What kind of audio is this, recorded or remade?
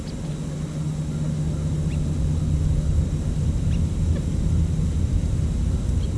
recorded